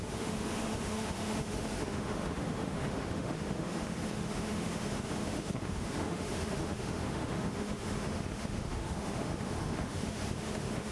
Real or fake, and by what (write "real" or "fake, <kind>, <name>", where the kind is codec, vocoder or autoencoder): fake, autoencoder, DAC-VAE